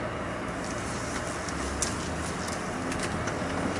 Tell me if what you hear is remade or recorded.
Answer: recorded